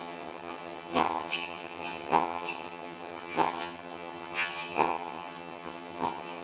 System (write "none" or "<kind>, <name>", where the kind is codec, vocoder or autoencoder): vocoder, HiFi-GAN